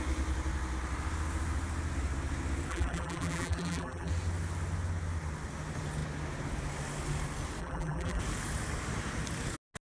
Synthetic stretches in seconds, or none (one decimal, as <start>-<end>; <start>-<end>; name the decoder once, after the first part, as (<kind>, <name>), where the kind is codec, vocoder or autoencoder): 2.7-4.1 (vocoder, BigVGAN v2); 7.6-8.2